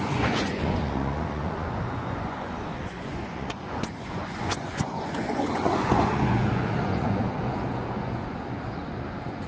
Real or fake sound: fake